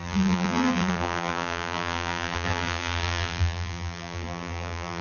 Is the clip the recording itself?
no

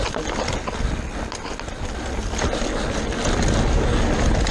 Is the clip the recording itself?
yes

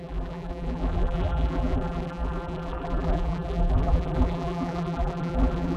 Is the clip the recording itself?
no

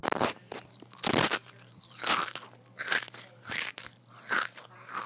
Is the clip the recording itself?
yes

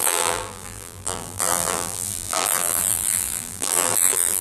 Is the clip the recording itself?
no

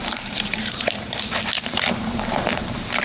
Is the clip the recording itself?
no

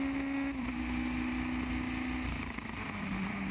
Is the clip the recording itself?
yes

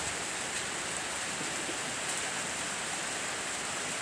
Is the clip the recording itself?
yes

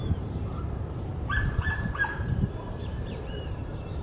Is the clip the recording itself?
no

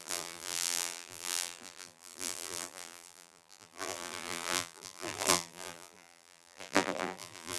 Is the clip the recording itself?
no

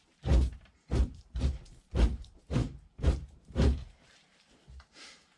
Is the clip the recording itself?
no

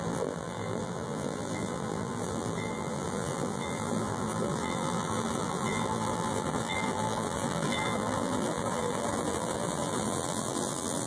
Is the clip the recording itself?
no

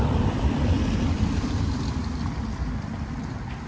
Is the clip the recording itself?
no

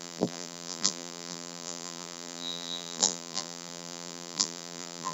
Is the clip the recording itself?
no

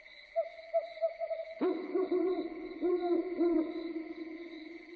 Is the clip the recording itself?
no